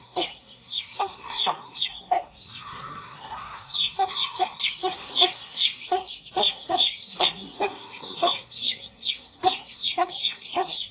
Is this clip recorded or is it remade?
remade